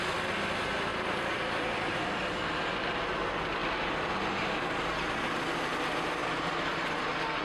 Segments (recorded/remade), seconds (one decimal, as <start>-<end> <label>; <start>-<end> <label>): 0.0-0.9 recorded; 0.9-2.2 remade; 2.2-3.6 recorded; 3.6-4.1 remade; 4.1-6.2 recorded; 6.2-6.9 remade; 6.9-7.4 recorded